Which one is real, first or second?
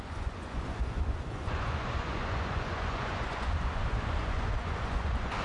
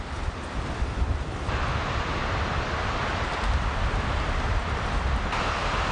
second